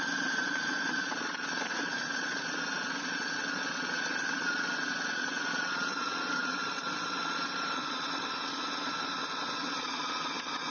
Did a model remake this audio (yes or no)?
yes